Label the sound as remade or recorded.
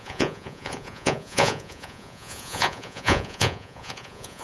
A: remade